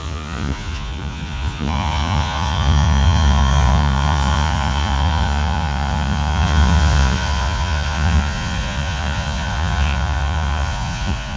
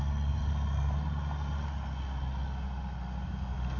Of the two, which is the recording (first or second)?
second